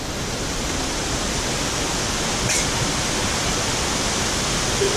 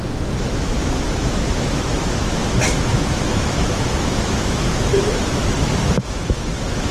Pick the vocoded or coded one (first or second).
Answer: second